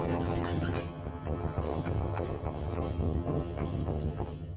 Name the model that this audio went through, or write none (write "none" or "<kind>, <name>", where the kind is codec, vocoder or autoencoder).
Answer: vocoder, HiFi-GAN